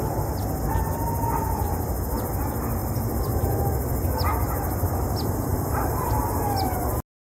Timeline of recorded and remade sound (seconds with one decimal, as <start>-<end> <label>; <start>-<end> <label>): 0.0-2.8 recorded; 2.8-3.4 remade; 3.4-5.5 recorded; 5.5-6.4 remade; 6.4-7.3 recorded